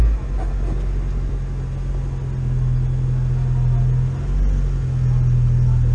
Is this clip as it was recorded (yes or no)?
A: yes